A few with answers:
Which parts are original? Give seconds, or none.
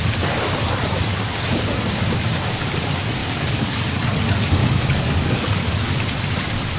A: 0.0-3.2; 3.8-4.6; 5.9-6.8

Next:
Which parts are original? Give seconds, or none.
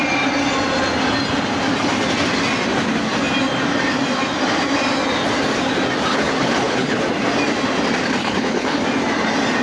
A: 0.0-6.1; 7.0-8.2; 8.8-9.6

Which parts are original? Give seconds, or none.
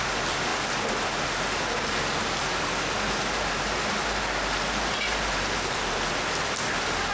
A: 0.0-7.1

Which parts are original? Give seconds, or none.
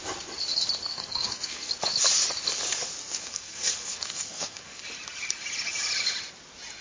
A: 0.0-0.9; 1.7-3.0; 4.8-6.8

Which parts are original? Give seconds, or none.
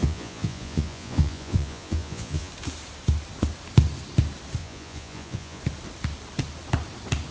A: 2.5-4.6; 5.6-7.3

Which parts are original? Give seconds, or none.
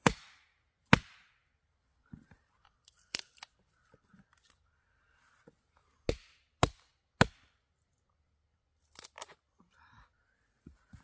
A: 0.0-1.4; 5.2-11.0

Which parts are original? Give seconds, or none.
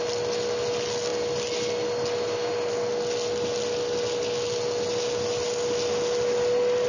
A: 0.0-6.9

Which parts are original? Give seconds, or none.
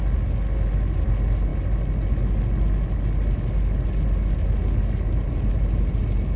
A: 0.0-6.4